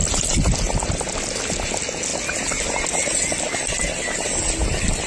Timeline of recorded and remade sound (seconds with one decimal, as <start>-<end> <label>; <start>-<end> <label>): 0.0-5.1 recorded